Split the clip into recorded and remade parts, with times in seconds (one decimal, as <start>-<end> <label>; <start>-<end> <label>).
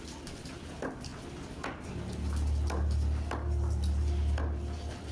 0.0-5.1 recorded